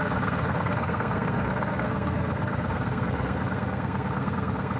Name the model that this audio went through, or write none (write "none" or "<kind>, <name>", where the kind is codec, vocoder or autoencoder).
codec, SNAC